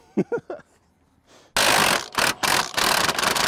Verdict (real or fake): real